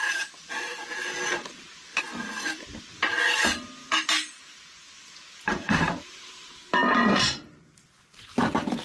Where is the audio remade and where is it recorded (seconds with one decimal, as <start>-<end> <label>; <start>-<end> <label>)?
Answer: 0.0-8.8 remade